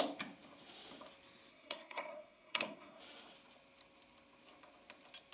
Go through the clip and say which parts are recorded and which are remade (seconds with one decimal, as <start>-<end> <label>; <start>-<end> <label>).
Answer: 0.0-1.5 recorded; 1.5-3.0 remade; 3.0-5.3 recorded